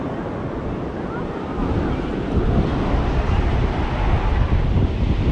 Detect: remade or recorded recorded